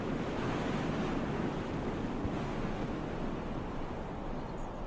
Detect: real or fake real